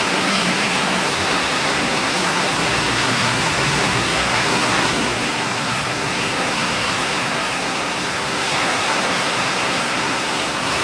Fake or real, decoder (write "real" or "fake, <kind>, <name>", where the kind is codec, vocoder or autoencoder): fake, codec, SNAC